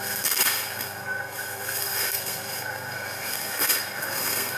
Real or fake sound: fake